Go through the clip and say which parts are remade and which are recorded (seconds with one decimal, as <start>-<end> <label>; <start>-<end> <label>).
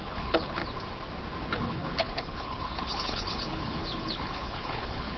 0.0-0.6 remade; 0.6-1.4 recorded; 1.4-5.2 remade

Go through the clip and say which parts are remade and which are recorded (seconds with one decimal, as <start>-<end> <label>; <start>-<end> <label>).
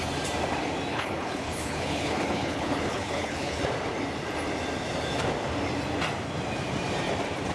0.0-0.9 recorded; 0.9-3.6 remade; 3.6-7.5 recorded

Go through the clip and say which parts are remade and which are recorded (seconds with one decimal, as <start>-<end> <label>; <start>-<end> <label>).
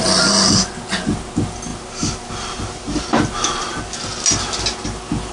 0.0-5.3 recorded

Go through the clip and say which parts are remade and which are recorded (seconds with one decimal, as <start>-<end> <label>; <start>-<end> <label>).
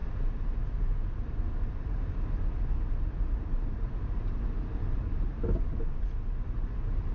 0.0-7.1 recorded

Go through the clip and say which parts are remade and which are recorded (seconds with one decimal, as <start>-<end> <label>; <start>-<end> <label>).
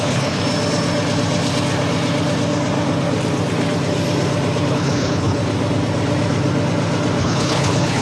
0.0-0.4 remade; 0.4-4.7 recorded; 4.7-5.4 remade; 5.4-7.2 recorded; 7.2-8.0 remade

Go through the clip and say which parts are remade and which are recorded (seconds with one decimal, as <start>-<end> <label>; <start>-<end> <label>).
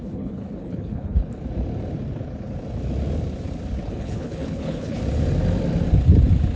0.0-1.2 remade; 1.2-3.9 recorded; 3.9-5.0 remade; 5.0-6.6 recorded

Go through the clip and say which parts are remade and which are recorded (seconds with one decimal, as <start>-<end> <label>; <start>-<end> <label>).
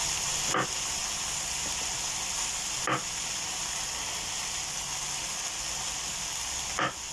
0.0-7.1 recorded